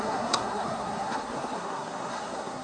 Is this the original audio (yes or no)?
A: no